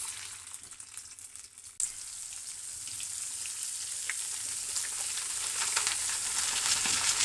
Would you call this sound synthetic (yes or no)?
no